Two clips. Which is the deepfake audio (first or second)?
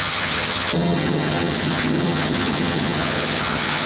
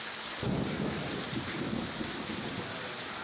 first